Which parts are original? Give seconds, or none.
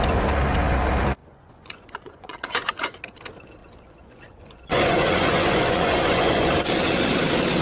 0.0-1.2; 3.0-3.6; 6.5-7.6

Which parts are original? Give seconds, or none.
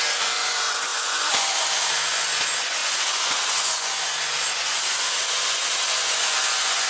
none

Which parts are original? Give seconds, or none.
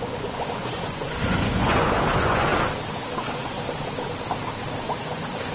2.5-3.2; 3.6-5.0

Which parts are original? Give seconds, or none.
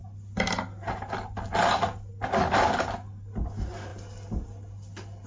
0.0-5.3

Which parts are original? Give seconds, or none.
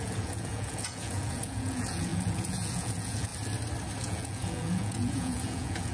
3.3-4.0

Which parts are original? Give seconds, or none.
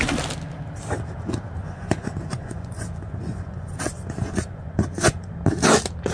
0.0-1.6; 5.3-6.1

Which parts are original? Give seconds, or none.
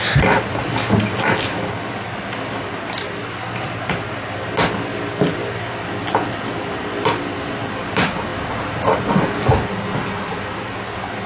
0.0-11.3